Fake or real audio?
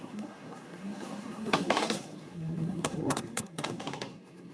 fake